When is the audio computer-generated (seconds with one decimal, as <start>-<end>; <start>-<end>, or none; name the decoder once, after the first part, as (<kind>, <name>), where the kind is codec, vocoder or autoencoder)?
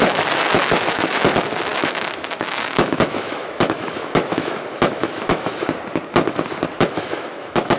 0.0-5.5 (autoencoder, DAC-VAE); 6.8-7.8